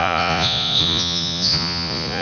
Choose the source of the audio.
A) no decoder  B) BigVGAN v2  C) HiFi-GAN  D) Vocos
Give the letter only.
D